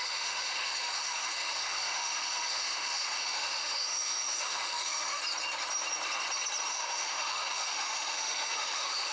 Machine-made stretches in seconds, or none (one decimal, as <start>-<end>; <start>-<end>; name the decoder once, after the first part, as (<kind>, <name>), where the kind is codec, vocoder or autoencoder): 0.0-5.2 (autoencoder, DAC-VAE); 6.7-9.1